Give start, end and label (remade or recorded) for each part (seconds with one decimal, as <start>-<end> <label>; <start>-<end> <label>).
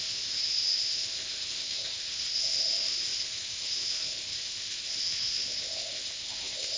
0.0-6.8 remade